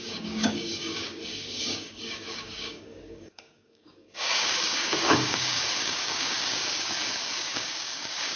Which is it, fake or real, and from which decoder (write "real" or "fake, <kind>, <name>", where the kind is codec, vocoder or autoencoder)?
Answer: fake, codec, DAC